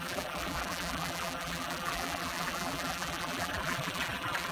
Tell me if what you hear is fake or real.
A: fake